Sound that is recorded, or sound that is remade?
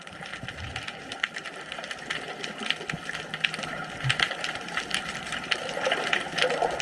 recorded